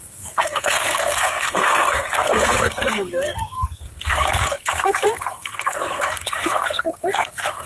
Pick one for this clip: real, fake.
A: fake